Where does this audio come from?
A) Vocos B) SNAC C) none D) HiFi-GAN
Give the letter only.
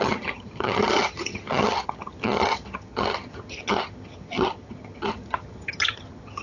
D